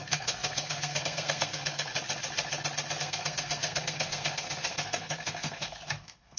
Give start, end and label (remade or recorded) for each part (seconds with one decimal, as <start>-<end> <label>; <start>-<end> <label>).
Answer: 0.0-1.9 remade; 1.9-3.0 recorded; 3.0-6.4 remade